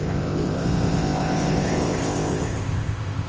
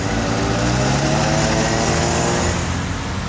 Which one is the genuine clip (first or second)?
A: second